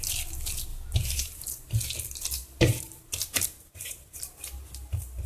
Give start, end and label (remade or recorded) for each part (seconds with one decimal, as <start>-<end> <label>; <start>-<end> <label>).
0.0-0.7 recorded; 0.7-1.7 remade; 1.7-2.4 recorded; 2.4-4.3 remade; 4.3-5.3 recorded